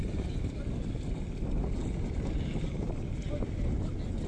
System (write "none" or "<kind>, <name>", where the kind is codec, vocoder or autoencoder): none